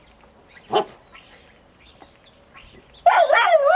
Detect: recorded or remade recorded